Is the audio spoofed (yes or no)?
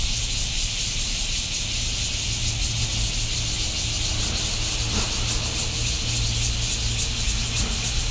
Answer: no